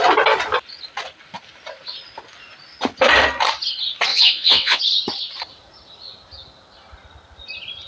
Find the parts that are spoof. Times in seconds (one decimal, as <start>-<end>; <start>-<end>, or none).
4.1-4.8